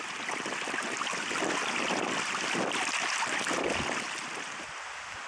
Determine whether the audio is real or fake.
real